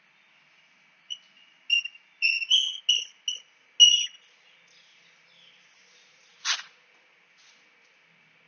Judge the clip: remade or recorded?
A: recorded